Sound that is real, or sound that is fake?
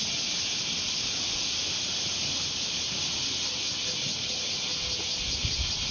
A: real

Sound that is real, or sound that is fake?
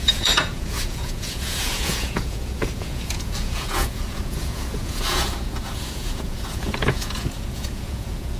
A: fake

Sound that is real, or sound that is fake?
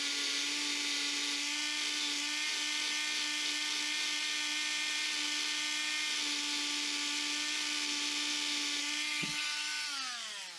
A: real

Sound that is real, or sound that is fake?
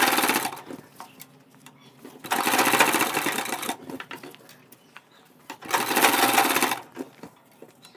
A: real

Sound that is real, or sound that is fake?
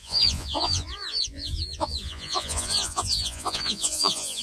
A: fake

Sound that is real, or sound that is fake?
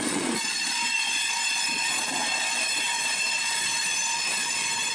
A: fake